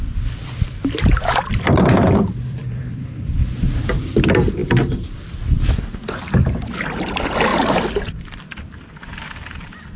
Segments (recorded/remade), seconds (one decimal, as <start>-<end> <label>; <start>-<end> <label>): 0.0-4.6 remade; 4.6-6.6 recorded; 6.6-10.0 remade